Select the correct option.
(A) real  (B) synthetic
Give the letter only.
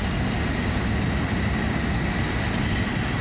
A